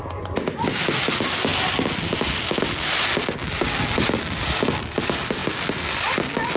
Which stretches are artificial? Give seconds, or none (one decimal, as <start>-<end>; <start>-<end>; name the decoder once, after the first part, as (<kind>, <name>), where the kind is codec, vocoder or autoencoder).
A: none